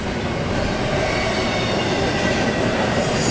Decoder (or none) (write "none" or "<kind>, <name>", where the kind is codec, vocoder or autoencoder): none